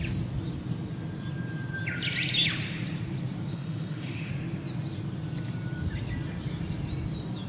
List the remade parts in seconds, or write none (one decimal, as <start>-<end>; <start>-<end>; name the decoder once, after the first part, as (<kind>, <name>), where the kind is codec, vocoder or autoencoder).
3.5-4.3 (autoencoder, DAC-VAE)